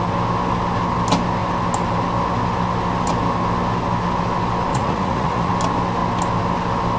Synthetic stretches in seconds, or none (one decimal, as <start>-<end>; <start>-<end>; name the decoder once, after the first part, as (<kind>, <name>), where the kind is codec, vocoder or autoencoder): 4.7-5.5 (vocoder, Vocos)